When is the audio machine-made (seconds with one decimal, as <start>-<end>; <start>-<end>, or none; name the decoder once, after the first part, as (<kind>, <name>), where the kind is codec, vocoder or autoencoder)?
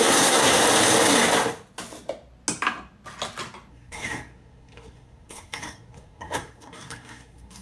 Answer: 0.0-0.6 (codec, SNAC); 3.7-7.6